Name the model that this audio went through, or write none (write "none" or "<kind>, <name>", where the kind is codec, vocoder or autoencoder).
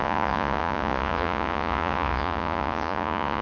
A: vocoder, Vocos